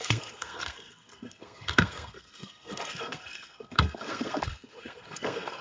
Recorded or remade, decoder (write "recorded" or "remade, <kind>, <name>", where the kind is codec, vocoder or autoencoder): remade, codec, SNAC